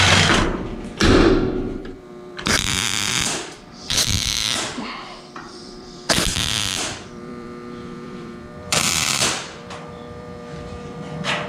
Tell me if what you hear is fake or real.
fake